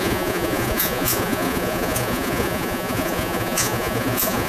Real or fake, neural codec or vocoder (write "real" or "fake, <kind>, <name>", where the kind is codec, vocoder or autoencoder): fake, vocoder, Vocos